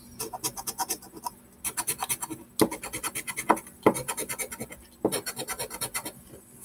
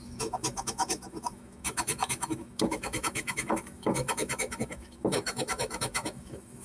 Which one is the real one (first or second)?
first